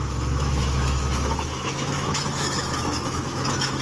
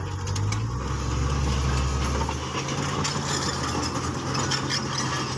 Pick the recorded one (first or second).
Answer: second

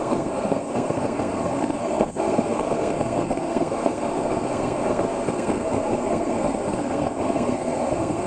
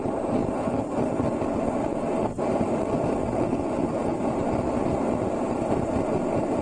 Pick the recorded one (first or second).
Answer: second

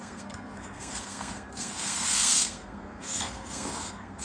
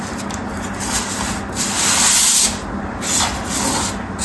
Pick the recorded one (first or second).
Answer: second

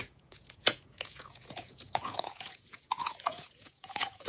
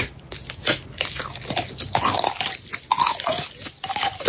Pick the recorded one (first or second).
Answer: second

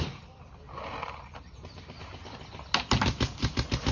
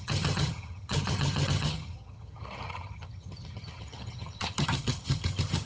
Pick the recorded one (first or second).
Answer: first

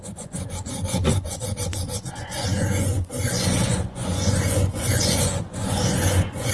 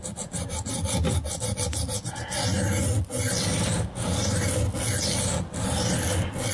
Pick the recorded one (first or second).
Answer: second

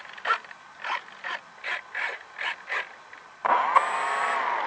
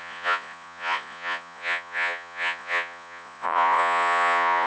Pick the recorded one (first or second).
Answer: first